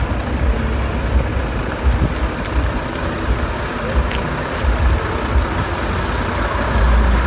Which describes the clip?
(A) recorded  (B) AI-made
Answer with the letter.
A